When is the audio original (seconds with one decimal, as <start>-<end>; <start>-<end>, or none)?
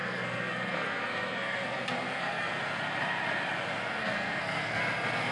2.5-4.0; 4.8-5.3